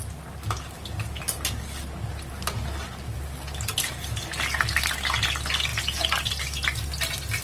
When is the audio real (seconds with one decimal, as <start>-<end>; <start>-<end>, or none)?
0.0-7.4